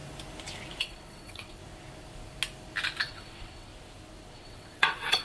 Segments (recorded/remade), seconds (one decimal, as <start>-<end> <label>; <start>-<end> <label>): 0.0-0.8 recorded; 0.8-1.6 remade; 1.6-3.0 recorded; 3.0-3.7 remade; 3.7-4.3 recorded; 4.3-5.2 remade